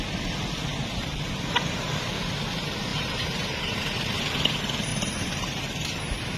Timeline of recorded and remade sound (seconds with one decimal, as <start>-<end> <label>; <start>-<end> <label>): 0.0-2.9 recorded; 2.9-4.2 remade; 4.2-4.9 recorded; 4.9-5.6 remade; 5.6-6.4 recorded